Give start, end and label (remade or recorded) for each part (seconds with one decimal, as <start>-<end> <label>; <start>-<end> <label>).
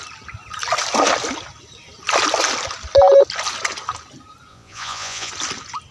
0.0-4.5 recorded; 4.5-5.3 remade; 5.3-5.9 recorded